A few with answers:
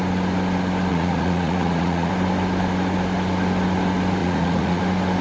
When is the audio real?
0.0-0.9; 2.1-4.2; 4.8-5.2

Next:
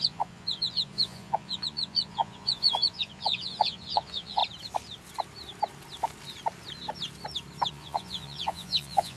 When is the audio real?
4.4-7.7